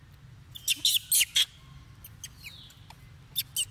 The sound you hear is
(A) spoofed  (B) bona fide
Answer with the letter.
B